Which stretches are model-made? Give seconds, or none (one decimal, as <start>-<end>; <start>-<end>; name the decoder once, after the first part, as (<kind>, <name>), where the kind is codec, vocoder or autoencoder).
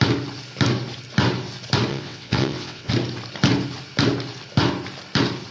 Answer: 1.9-2.9 (vocoder, WaveNeXt)